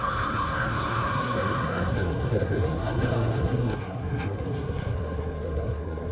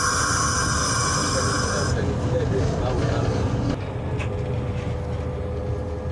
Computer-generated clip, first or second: first